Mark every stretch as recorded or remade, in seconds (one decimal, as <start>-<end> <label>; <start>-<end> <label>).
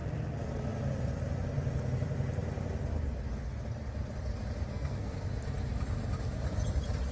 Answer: 0.0-4.7 recorded; 4.7-5.2 remade; 5.2-7.1 recorded